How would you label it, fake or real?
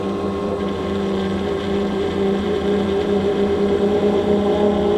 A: fake